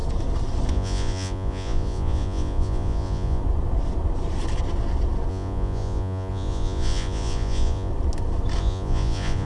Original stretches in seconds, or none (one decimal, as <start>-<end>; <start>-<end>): 0.0-0.7; 3.4-5.3; 7.9-8.6